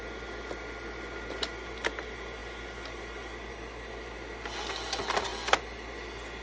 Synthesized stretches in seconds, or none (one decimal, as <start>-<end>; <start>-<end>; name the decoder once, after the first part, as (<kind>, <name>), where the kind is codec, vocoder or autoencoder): none